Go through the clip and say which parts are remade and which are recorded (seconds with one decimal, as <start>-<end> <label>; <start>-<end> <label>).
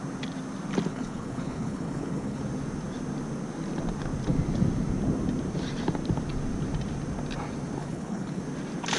0.0-0.9 recorded; 0.9-2.4 remade; 2.4-7.8 recorded; 7.8-8.4 remade; 8.4-9.0 recorded